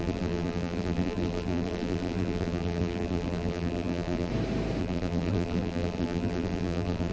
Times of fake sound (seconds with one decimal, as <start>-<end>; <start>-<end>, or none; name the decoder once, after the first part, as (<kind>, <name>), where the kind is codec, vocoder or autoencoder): 0.0-4.3 (vocoder, BigVGAN v2); 4.8-7.1